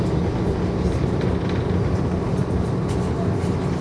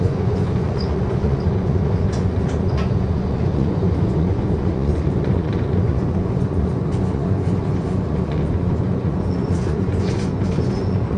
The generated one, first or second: second